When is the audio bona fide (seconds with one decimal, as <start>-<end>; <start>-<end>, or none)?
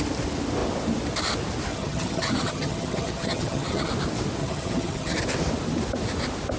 0.0-1.7; 3.9-4.4; 5.2-6.6